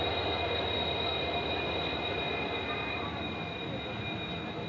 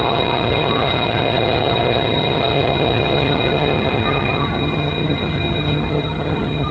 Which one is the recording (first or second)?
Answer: first